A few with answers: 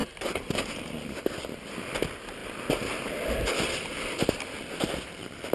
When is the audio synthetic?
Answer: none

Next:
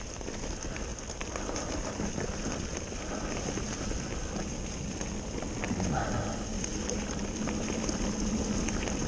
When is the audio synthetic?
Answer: 0.9-2.1 (vocoder, BigVGAN v2)

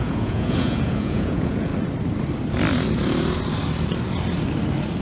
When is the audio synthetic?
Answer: 0.0-1.7 (vocoder, Vocos)

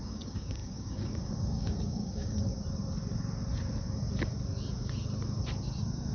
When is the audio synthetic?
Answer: 0.0-2.5 (codec, DAC)

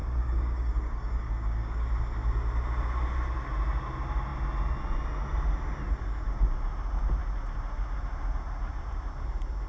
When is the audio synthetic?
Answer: 0.0-1.9 (codec, DAC)

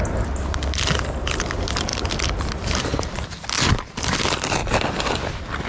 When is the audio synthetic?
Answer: none